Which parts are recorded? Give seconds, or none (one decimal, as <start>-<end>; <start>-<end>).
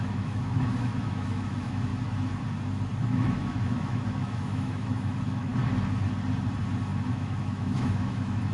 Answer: 1.9-3.0; 5.5-7.1